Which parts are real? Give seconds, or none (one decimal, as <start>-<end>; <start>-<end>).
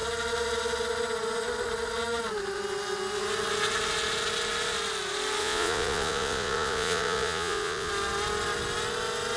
0.0-5.4; 7.9-9.4